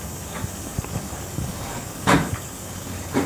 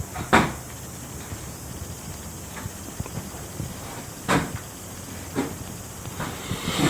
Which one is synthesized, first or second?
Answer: first